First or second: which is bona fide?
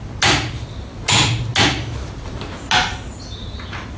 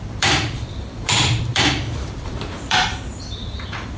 first